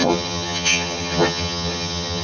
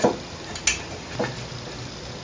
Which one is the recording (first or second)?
second